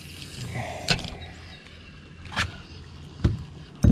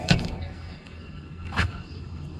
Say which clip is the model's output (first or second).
second